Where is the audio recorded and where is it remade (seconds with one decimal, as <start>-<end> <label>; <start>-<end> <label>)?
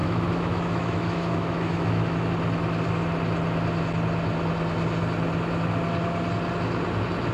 0.0-2.3 remade; 2.3-7.3 recorded